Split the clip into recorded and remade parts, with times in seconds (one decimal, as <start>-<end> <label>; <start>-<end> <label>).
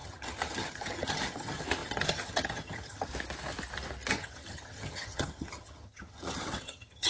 0.0-3.1 remade; 3.1-4.1 recorded; 4.1-7.1 remade